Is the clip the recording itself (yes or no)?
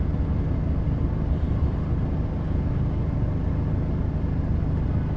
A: yes